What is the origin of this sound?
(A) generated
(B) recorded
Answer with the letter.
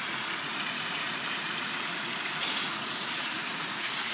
A